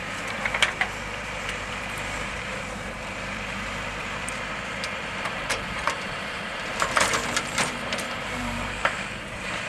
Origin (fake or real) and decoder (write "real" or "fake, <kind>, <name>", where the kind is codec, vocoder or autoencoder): fake, vocoder, BigVGAN v2